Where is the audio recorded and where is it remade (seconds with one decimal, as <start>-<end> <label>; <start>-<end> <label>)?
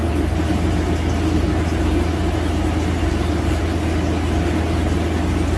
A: 0.0-0.7 remade; 0.7-3.0 recorded; 3.0-3.6 remade; 3.6-5.6 recorded